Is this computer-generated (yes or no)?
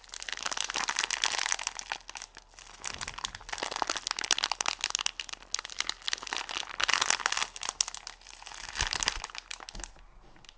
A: no